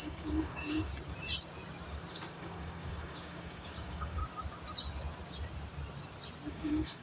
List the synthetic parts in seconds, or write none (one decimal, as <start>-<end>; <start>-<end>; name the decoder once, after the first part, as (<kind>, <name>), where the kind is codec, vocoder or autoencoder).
0.0-0.9 (codec, DAC); 2.1-4.2; 6.5-7.0